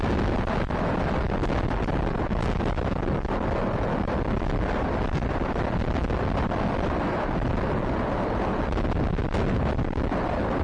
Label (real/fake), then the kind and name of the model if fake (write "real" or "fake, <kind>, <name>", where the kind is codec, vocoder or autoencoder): real